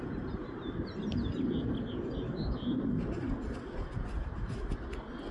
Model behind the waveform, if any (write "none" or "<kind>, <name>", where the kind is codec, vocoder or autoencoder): none